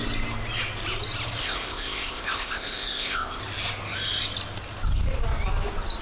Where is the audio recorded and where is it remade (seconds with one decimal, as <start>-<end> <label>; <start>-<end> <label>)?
0.0-1.4 recorded; 1.4-3.4 remade; 3.4-6.0 recorded